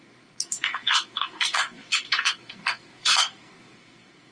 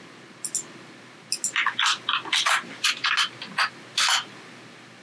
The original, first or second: second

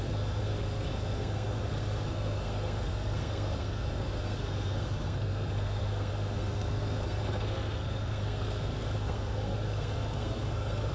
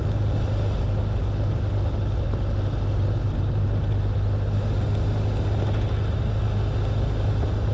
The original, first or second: second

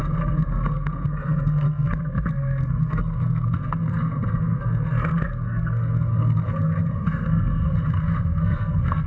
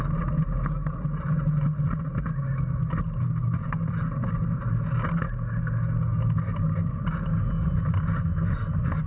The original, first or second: second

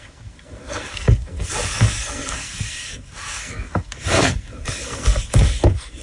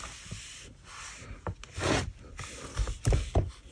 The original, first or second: second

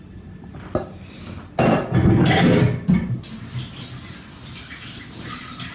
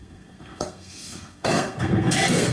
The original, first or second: first